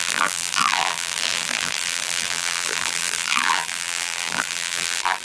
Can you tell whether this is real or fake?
fake